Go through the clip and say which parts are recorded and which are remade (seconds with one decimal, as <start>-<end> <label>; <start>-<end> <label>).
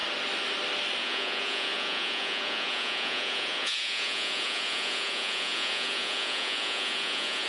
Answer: 0.0-1.0 recorded; 1.0-7.5 remade